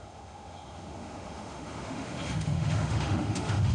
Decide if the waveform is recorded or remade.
remade